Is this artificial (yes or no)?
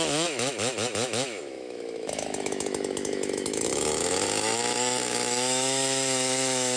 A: yes